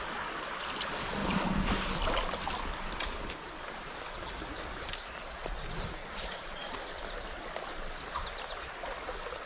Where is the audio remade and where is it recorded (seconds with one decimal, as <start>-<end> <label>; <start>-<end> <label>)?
0.0-6.0 recorded; 6.0-6.8 remade; 6.8-9.5 recorded